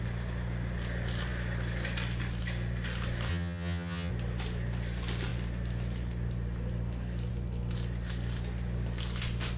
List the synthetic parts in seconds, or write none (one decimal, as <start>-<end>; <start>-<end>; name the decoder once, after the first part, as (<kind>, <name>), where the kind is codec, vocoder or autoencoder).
3.3-4.1 (vocoder, HiFi-GAN)

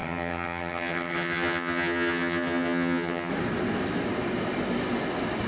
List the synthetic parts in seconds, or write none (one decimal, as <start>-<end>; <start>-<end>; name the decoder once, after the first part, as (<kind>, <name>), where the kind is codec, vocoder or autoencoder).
0.0-3.3 (vocoder, HiFi-GAN)

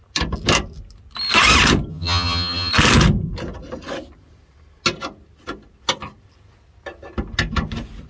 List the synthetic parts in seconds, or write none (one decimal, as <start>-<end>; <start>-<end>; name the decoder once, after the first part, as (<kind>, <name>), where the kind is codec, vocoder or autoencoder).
1.9-2.7 (vocoder, HiFi-GAN)

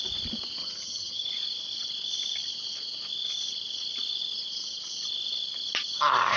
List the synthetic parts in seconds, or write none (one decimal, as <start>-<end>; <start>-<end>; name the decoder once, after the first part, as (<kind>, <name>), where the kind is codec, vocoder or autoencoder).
0.6-1.3 (vocoder, HiFi-GAN)

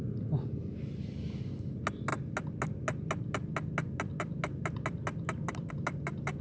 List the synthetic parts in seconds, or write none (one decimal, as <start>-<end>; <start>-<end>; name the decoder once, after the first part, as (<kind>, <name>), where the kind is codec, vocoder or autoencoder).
none